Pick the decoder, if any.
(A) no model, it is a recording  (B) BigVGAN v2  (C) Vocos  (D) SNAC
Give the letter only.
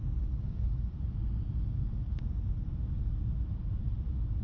A